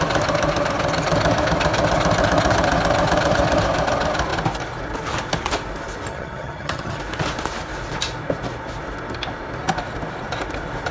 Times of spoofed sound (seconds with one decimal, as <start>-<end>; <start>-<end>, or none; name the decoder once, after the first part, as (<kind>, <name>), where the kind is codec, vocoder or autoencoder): 6.1-7.0 (vocoder, HiFi-GAN)